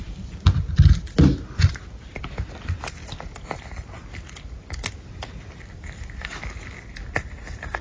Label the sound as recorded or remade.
recorded